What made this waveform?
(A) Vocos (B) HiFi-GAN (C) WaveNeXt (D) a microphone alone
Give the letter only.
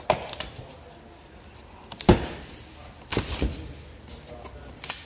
D